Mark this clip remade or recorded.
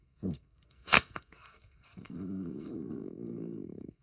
remade